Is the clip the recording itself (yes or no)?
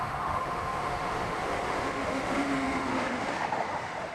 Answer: no